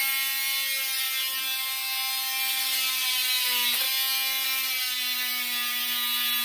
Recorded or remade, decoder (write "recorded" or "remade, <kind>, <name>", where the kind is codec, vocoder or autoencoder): recorded